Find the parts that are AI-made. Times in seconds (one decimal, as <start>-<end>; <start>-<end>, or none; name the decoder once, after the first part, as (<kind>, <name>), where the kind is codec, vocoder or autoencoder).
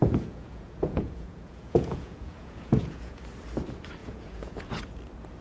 0.0-3.2 (vocoder, Vocos); 4.0-4.6